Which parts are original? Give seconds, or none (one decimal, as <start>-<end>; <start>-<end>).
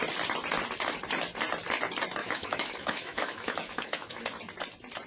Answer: 0.0-2.2; 4.2-5.1